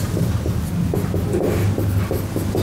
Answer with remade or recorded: recorded